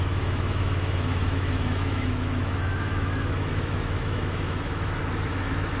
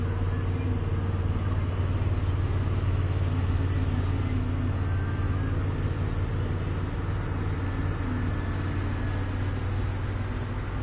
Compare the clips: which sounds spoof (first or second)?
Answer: first